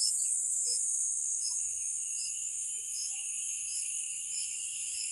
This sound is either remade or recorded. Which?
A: remade